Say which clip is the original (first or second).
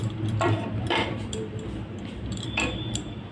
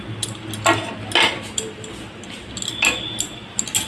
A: second